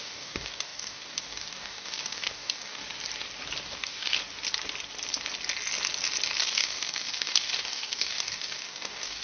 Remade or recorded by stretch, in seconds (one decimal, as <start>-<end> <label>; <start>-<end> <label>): 0.0-2.8 remade; 2.8-3.7 recorded; 3.7-4.2 remade; 4.2-6.4 recorded; 6.4-9.2 remade